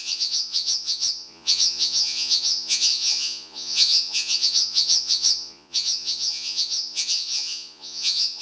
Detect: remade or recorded remade